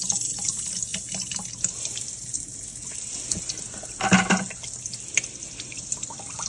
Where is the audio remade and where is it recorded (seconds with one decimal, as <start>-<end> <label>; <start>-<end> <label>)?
0.0-6.5 recorded